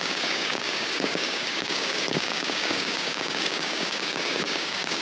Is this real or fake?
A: fake